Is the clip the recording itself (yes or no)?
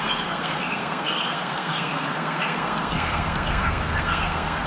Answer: no